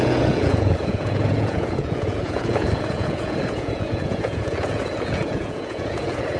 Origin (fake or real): fake